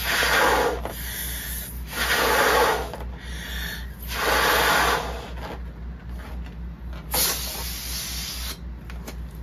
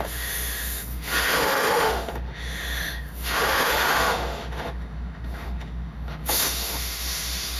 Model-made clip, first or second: second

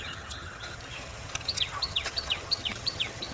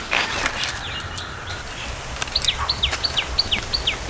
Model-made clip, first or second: first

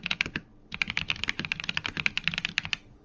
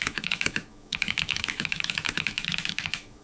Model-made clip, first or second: second